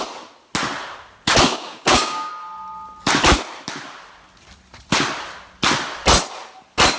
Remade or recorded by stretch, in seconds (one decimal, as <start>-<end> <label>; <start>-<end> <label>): 0.0-1.5 recorded; 1.5-2.3 remade; 2.3-7.0 recorded